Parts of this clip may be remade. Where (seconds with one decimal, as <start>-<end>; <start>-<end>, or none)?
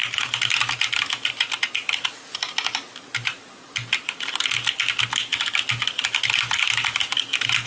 none